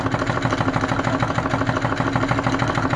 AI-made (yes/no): no